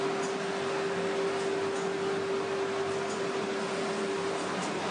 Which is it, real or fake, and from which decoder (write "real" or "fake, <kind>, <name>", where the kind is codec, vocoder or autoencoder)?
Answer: real